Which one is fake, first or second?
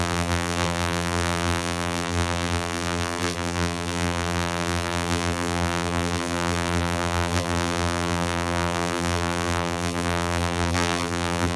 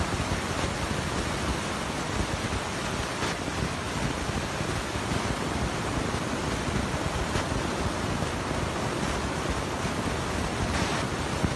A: first